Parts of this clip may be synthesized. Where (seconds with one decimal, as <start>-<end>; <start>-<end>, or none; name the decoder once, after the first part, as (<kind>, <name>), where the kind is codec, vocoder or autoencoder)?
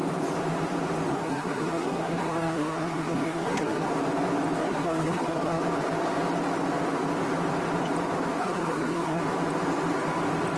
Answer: 1.1-3.9 (codec, SNAC); 4.6-5.6; 8.4-9.2